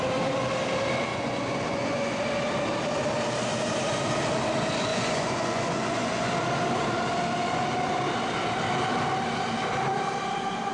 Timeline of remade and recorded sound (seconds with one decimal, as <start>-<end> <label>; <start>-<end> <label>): 0.0-1.1 recorded; 1.1-2.2 remade; 2.2-4.9 recorded; 4.9-6.3 remade; 6.3-10.7 recorded